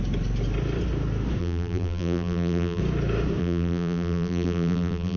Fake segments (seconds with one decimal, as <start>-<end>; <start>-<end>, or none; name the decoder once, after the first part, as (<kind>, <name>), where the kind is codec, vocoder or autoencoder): 1.4-2.8 (vocoder, BigVGAN v2); 3.4-5.2